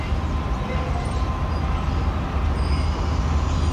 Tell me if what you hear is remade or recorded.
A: recorded